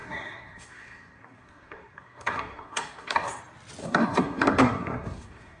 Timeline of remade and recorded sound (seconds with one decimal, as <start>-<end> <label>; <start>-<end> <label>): 0.0-3.4 remade; 3.4-3.8 recorded; 3.8-5.6 remade